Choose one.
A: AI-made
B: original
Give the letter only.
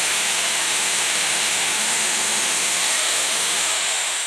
A